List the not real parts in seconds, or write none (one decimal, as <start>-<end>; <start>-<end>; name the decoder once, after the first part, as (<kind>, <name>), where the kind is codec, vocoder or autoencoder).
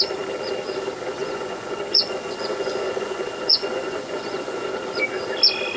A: 1.2-4.7 (vocoder, Vocos)